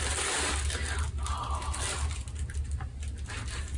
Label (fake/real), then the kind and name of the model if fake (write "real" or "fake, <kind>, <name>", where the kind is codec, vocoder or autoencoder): real